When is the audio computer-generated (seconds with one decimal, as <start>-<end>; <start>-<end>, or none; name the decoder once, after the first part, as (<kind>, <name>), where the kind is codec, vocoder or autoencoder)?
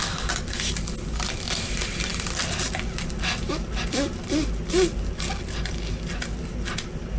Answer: none